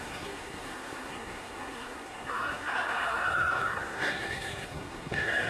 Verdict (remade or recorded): remade